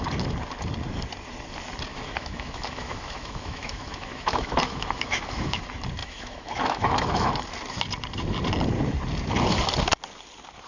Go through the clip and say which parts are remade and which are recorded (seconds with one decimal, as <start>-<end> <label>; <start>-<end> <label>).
0.0-1.9 recorded; 1.9-5.6 remade; 5.6-6.0 recorded; 6.0-7.3 remade; 7.3-10.7 recorded